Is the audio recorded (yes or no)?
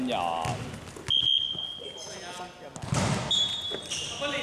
yes